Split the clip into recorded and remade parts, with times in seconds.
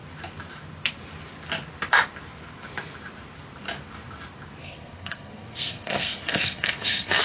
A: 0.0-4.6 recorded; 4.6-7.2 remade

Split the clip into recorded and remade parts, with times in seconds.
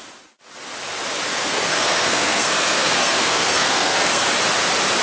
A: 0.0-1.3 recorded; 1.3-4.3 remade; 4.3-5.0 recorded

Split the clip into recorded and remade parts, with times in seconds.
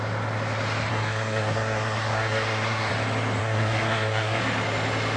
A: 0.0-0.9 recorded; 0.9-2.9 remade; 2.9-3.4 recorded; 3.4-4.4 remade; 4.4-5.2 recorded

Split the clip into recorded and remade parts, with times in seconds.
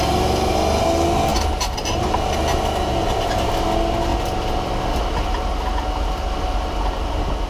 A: 0.0-7.5 recorded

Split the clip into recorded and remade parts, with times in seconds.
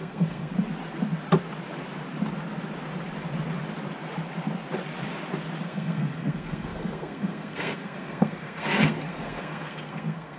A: 0.0-0.5 remade; 0.5-5.6 recorded; 5.6-10.4 remade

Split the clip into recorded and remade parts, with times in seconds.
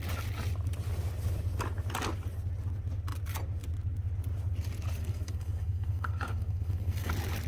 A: 0.0-5.0 recorded; 5.0-7.1 remade; 7.1-7.5 recorded